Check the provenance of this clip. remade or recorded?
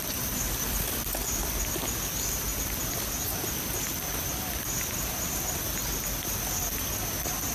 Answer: recorded